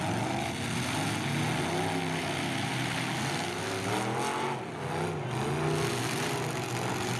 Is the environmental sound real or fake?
real